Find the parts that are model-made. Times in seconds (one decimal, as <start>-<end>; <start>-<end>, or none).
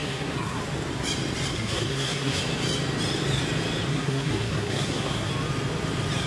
0.0-0.6; 1.5-2.4; 3.9-5.3